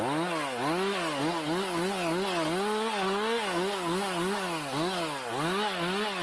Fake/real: real